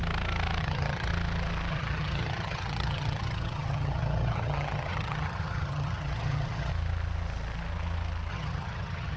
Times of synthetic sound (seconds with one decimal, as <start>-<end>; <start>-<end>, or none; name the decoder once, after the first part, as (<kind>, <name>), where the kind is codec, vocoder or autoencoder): 0.6-1.1 (vocoder, HiFi-GAN); 1.7-6.7; 8.3-9.2